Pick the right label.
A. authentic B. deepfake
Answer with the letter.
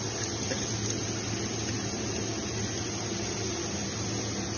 A